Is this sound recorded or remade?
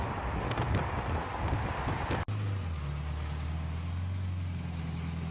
recorded